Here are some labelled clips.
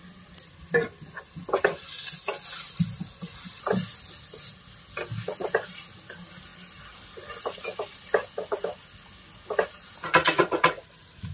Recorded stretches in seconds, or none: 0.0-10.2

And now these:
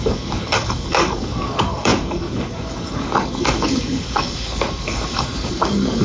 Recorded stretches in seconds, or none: none

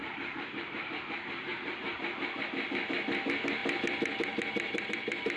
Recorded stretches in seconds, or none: 0.9-5.4

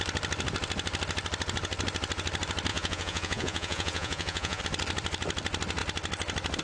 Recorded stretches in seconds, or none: 0.0-2.7; 4.6-6.6